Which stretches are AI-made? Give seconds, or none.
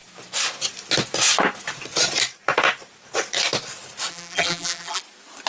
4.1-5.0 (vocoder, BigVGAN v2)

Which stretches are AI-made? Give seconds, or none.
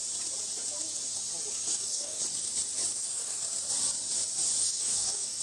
1.7-2.2 (codec, DAC); 2.9-3.4; 4.6-5.4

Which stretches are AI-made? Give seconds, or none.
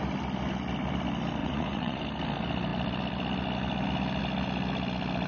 1.4-2.0 (vocoder, Vocos)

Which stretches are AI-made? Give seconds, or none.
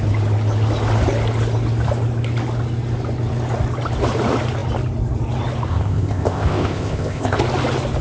5.7-7.4 (codec, ZipCodec)